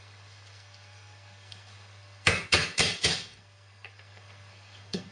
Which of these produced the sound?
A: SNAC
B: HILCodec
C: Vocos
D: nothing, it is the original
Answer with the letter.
A